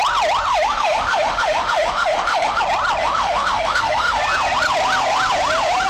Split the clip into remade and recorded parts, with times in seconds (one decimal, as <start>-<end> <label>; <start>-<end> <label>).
0.0-0.5 recorded; 0.5-2.6 remade; 2.6-3.0 recorded; 3.0-4.2 remade; 4.2-5.9 recorded